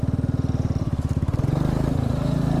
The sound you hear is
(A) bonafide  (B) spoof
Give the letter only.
B